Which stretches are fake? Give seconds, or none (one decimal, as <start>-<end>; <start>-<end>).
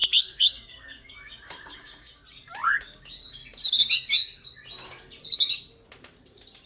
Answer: 0.0-2.2; 2.8-3.4